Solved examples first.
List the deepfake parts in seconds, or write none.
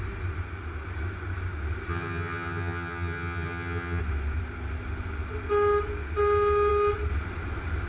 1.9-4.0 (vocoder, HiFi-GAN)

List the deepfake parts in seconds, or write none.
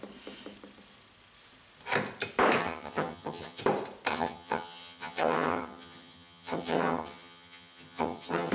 2.6-3.6 (vocoder, HiFi-GAN); 4.1-8.5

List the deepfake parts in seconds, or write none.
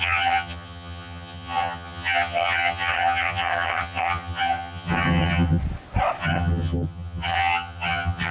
0.0-5.6 (vocoder, HiFi-GAN); 6.2-8.3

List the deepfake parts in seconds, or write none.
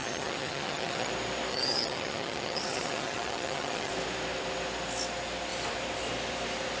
0.0-1.1 (vocoder, HiFi-GAN); 1.5-3.9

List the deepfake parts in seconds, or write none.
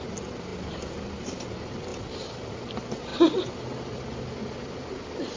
none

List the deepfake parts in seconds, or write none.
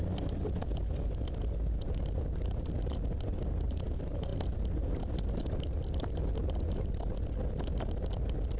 none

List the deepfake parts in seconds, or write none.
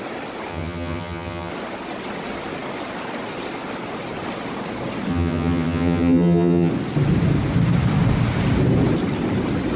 0.5-1.5 (vocoder, HiFi-GAN); 5.1-6.7